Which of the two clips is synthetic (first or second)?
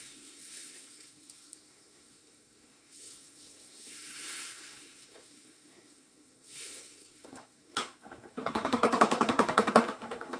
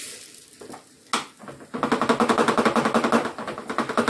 first